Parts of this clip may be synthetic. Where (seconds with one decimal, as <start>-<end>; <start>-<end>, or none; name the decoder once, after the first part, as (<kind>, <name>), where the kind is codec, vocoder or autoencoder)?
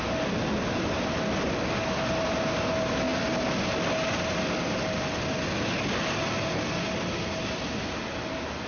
none